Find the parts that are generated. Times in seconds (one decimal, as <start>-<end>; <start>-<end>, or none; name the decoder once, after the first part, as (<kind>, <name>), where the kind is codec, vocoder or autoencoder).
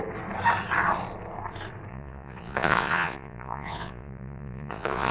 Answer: 1.9-5.1 (vocoder, Vocos)